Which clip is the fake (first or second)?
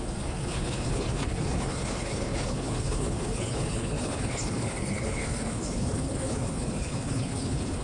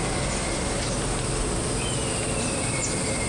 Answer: first